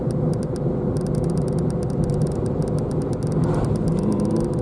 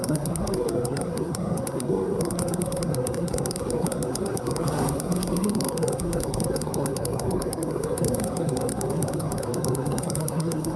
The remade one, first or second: second